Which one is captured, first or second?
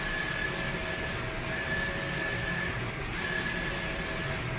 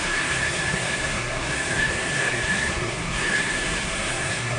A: first